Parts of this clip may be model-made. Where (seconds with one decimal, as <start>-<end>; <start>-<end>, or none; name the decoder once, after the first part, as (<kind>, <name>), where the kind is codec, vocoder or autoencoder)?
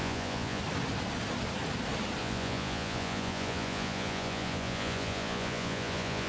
0.0-0.6 (vocoder, Vocos); 2.2-6.3